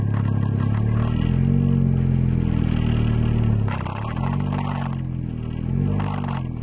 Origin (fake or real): real